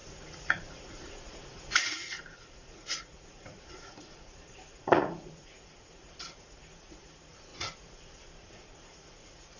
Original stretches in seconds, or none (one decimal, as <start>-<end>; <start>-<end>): none